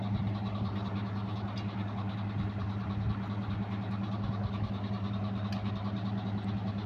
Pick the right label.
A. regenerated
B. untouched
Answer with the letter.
B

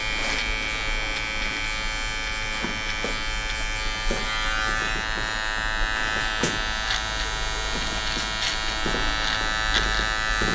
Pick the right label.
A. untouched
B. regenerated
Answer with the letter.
A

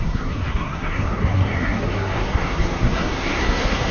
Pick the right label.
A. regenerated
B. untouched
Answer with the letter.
A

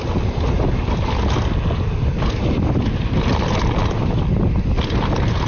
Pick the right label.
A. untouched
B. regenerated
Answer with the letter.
A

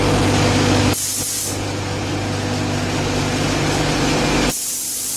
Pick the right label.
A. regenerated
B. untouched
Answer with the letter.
B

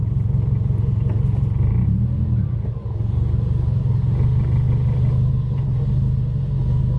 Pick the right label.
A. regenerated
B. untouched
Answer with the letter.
B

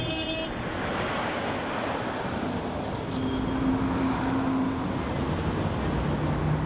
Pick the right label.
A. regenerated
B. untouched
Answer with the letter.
B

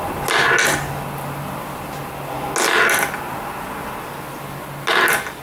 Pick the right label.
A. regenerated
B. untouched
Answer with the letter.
B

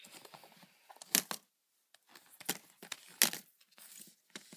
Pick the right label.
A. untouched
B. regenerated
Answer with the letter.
A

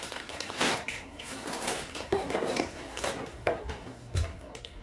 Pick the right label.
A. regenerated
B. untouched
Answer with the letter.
A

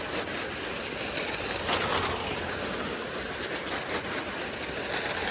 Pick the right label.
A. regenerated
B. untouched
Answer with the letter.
B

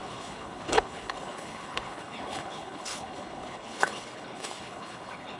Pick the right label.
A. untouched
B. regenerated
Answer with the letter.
B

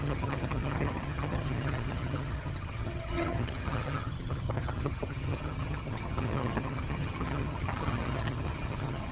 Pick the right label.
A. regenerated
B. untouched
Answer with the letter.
A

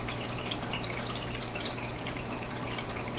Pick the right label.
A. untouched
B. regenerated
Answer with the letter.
B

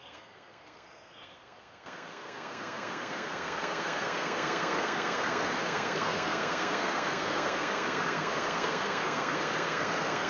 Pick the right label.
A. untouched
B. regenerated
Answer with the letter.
B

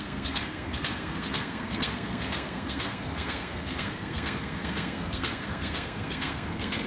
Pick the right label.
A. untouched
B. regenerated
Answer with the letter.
B